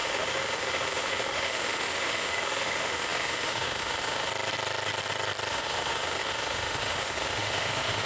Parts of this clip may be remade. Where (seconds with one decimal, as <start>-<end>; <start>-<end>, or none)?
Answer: 0.0-4.3; 5.5-8.1